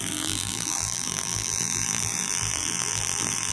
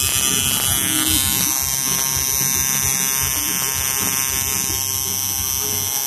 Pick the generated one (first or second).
first